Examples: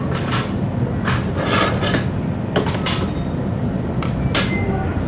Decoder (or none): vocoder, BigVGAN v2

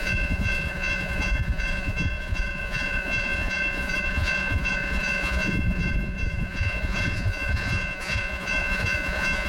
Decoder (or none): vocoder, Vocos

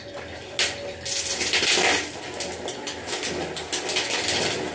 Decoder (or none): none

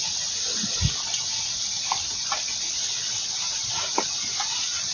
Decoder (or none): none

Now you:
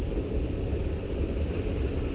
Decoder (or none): vocoder, BigVGAN v2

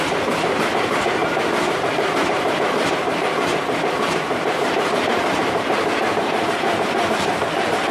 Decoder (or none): vocoder, BigVGAN v2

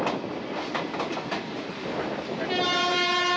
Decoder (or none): none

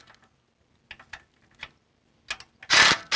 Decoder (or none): none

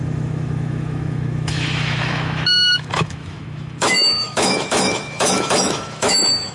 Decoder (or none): autoencoder, DAC-VAE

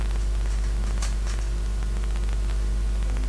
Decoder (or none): none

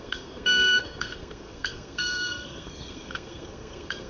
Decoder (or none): codec, SNAC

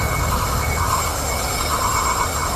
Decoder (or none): none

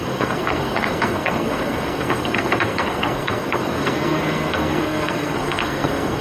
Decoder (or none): codec, SNAC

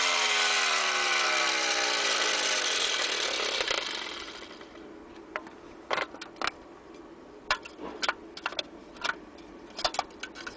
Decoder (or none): none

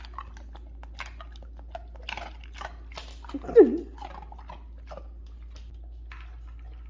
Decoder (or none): none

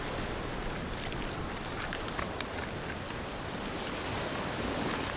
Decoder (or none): none